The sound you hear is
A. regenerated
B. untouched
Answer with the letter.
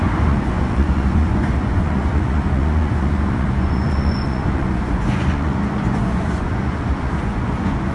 A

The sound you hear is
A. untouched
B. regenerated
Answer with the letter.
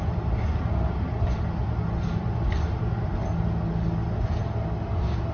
A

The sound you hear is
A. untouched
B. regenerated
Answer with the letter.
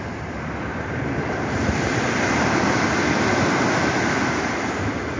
A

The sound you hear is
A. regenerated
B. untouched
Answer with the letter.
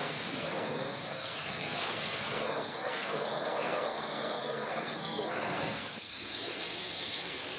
A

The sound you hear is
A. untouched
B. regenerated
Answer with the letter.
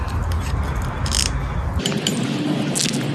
A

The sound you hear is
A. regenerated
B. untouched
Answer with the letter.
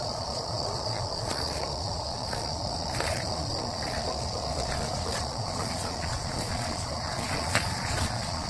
A